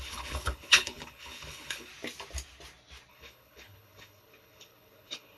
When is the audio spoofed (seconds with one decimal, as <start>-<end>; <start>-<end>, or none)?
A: 0.0-1.9; 3.1-5.4